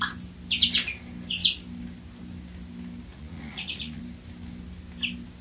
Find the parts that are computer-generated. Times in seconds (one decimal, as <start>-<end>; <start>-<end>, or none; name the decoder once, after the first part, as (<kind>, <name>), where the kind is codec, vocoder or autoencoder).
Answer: 3.1-4.0 (vocoder, Vocos)